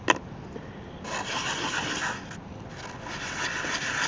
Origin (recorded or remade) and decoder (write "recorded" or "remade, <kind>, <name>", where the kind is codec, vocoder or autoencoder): recorded